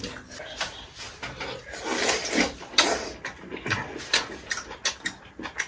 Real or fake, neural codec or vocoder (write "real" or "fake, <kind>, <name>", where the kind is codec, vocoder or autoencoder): real